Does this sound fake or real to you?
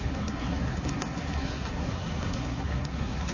fake